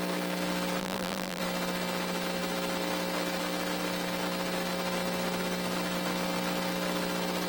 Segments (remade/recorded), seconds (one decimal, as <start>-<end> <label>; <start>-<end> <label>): 0.0-0.8 recorded; 0.8-1.4 remade; 1.4-7.5 recorded